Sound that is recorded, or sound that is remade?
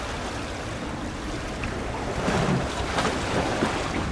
recorded